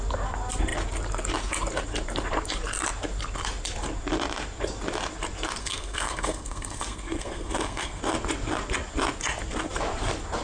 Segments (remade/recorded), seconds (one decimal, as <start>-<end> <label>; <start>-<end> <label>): 0.0-5.6 recorded; 5.6-8.0 remade; 8.0-10.4 recorded